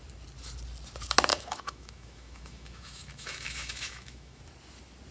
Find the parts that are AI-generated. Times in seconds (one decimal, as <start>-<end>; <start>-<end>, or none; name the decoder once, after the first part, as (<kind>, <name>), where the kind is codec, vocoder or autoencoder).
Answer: 1.3-4.4 (autoencoder, DAC-VAE)